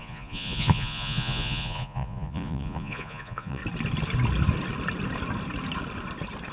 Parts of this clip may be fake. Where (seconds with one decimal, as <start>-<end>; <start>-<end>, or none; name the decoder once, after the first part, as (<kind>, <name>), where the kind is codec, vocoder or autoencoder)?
0.0-3.6 (vocoder, Vocos)